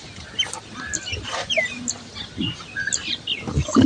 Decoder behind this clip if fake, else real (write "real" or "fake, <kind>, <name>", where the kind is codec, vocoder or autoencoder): real